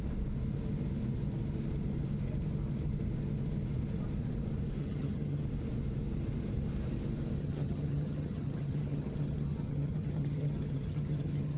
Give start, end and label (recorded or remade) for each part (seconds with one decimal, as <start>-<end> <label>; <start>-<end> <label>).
0.0-4.8 recorded; 4.8-5.4 remade; 5.4-7.4 recorded; 7.4-11.6 remade